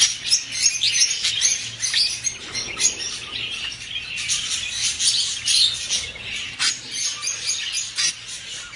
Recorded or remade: recorded